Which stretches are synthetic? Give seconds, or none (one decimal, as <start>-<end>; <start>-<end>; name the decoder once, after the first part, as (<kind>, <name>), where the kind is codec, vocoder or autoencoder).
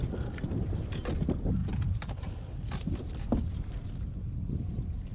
none